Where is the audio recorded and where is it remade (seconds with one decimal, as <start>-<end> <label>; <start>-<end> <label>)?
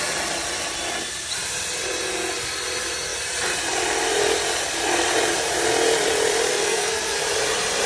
0.0-6.5 recorded; 6.5-7.2 remade; 7.2-7.9 recorded